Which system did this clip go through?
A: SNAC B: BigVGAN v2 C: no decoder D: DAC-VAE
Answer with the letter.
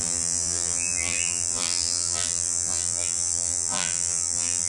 B